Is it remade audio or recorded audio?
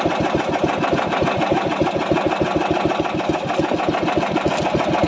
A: recorded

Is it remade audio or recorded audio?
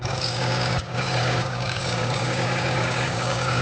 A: remade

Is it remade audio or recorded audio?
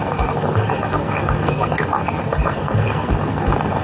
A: remade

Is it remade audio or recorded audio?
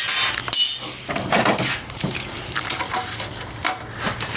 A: recorded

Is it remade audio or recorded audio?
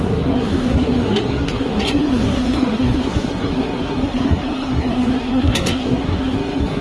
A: remade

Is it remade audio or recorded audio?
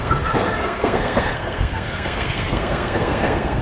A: remade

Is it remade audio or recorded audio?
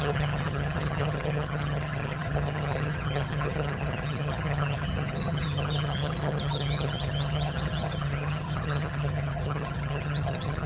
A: remade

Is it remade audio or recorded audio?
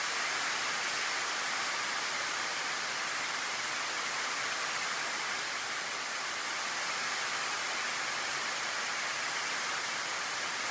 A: recorded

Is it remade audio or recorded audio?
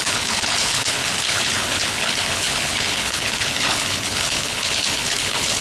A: remade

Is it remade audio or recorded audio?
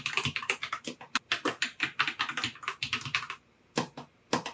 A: recorded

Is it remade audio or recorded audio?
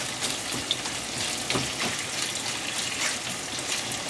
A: recorded